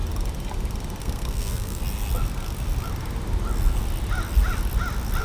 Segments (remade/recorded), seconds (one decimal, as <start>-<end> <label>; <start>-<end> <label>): 0.0-1.0 recorded; 1.0-1.8 remade; 1.8-5.2 recorded